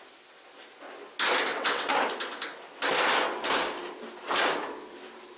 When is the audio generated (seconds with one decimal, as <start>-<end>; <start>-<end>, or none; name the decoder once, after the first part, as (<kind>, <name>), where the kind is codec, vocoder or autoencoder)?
1.5-2.1 (vocoder, WaveNeXt)